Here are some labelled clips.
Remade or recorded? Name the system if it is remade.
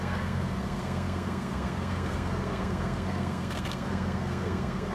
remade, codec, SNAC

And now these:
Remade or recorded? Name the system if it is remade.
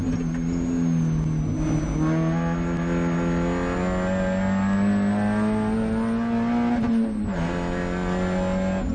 recorded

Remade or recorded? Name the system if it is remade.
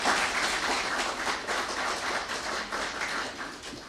recorded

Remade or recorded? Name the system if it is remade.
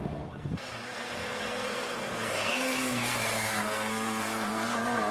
remade, codec, SNAC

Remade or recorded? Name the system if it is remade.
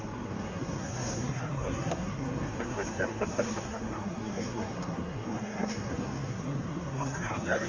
remade, codec, SNAC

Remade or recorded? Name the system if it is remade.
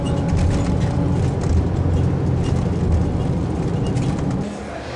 recorded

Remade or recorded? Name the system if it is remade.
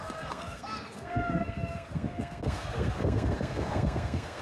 remade, codec, SNAC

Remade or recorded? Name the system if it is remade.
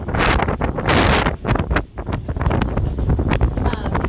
recorded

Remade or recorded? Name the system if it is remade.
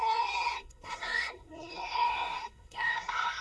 remade, codec, SNAC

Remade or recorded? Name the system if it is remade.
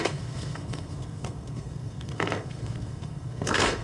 remade, codec, SNAC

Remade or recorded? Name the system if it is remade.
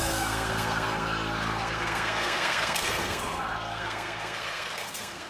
remade, codec, SNAC